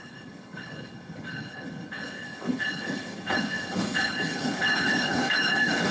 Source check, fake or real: fake